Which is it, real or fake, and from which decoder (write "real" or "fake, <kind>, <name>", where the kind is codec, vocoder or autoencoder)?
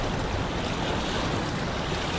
real